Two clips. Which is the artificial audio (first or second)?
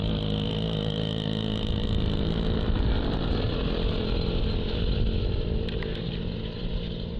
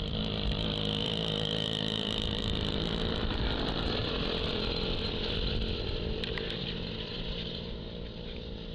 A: second